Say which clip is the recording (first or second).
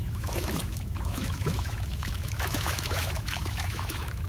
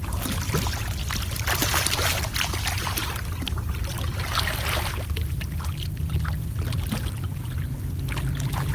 second